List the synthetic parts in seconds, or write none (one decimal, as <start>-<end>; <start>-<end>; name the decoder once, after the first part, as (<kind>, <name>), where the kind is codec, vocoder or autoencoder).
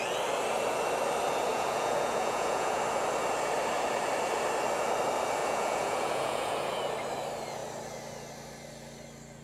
1.5-2.8 (vocoder, Vocos); 5.4-6.8